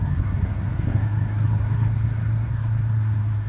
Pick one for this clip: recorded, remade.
remade